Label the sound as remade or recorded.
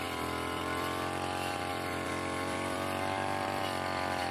remade